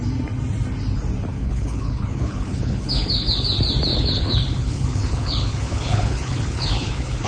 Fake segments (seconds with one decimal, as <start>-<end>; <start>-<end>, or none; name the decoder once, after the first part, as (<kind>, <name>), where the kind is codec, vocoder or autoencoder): 1.3-3.3 (codec, HILCodec); 3.9-7.3